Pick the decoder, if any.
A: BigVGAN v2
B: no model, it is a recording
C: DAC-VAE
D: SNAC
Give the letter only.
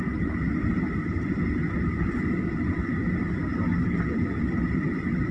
A